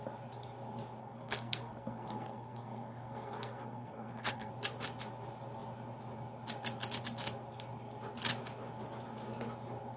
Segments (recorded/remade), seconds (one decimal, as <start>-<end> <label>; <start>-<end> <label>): 0.0-1.0 recorded; 1.0-4.5 remade; 4.5-10.0 recorded